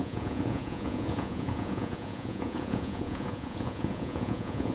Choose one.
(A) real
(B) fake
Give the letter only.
B